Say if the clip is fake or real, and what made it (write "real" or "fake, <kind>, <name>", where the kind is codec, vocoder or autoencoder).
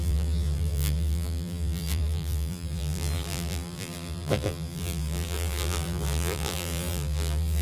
fake, vocoder, BigVGAN v2